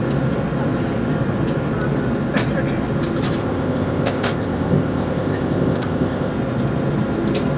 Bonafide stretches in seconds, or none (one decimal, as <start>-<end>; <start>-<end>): 0.0-3.4; 6.3-7.6